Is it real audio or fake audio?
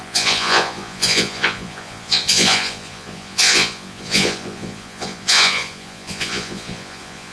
fake